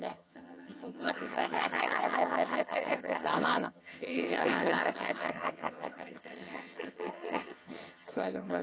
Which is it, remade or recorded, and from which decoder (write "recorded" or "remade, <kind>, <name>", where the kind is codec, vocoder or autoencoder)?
remade, vocoder, HiFi-GAN